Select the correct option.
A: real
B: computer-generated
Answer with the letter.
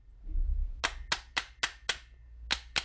A